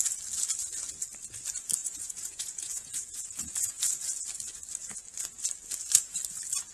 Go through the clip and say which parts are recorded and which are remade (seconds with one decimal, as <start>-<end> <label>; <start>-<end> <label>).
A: 0.0-1.8 recorded; 1.8-3.8 remade; 3.8-6.7 recorded